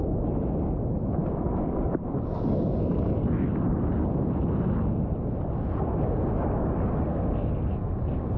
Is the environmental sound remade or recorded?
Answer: recorded